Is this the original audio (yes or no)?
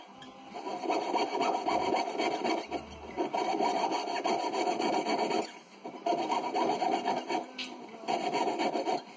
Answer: yes